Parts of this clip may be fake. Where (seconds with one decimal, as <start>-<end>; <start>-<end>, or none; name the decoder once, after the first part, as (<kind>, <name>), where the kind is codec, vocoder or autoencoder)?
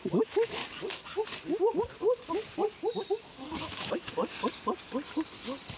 0.0-0.6 (autoencoder, DAC-VAE); 3.2-4.2